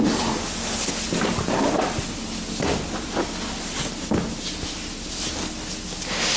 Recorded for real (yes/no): yes